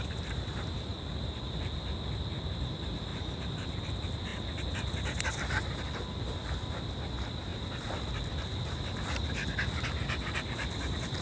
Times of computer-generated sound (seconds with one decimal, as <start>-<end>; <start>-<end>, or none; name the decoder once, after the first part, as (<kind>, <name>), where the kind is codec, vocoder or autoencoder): 3.1-3.8 (vocoder, BigVGAN v2)